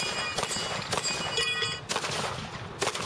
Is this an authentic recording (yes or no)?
yes